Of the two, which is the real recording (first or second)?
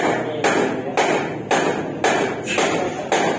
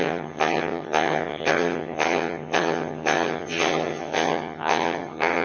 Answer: first